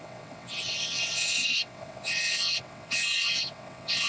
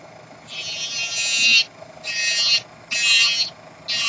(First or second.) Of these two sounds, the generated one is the first